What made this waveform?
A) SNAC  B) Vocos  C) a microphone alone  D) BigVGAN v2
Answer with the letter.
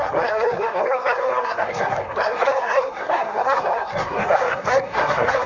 A